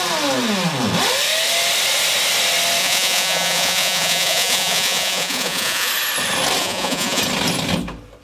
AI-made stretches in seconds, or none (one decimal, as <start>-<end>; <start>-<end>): 2.8-5.9; 6.6-7.2